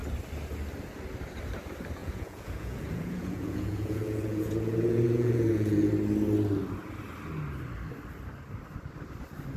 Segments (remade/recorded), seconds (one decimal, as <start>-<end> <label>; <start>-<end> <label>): 0.0-2.0 recorded; 2.0-5.9 remade; 5.9-9.6 recorded